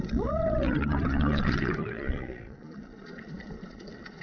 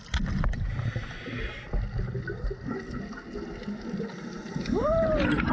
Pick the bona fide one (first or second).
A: second